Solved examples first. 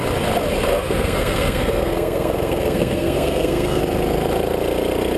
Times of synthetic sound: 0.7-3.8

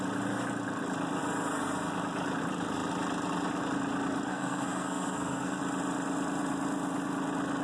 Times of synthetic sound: 4.3-5.6

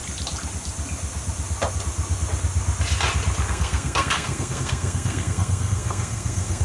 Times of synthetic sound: 3.5-6.6

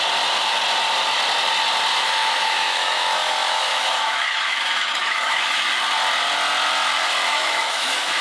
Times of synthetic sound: 1.9-5.6; 7.3-8.2